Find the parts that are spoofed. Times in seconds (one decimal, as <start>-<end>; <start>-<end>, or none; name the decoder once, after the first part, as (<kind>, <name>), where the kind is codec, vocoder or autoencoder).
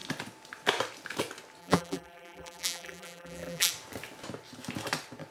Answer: 1.6-3.7 (vocoder, BigVGAN v2)